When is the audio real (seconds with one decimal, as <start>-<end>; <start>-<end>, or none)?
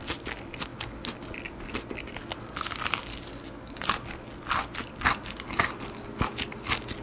0.0-7.0